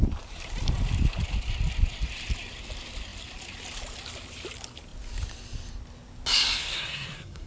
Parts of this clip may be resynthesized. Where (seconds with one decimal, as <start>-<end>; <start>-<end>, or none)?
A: 6.6-7.5